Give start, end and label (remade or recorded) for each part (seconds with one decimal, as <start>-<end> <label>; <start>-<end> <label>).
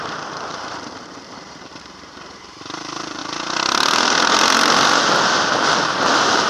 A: 0.0-3.2 remade; 3.2-5.8 recorded; 5.8-6.5 remade